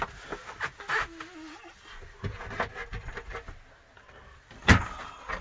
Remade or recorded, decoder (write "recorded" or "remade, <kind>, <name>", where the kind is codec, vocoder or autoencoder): recorded